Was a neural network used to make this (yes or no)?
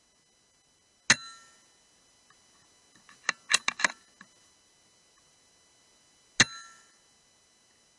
no